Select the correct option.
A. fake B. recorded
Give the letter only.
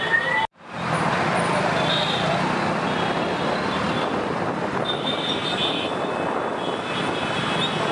B